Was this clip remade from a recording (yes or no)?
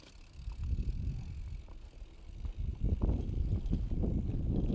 no